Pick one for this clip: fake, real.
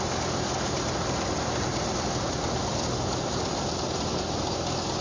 real